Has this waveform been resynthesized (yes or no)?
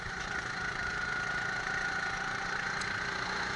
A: yes